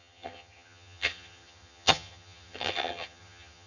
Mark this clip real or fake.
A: fake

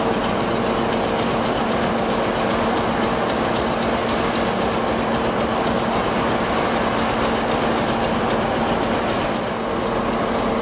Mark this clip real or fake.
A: real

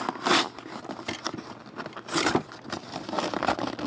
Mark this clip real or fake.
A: real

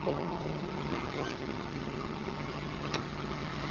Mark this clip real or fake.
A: fake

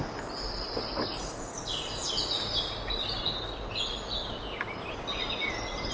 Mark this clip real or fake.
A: real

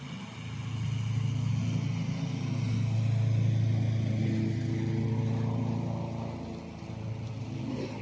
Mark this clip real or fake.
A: real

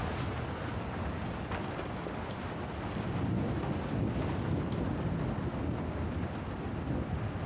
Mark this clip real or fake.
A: real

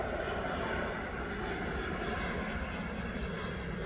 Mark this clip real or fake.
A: real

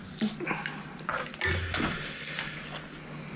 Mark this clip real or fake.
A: real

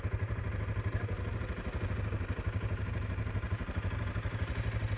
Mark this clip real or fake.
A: real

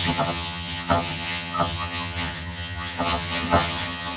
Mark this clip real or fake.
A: fake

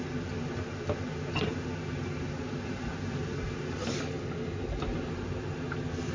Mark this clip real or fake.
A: real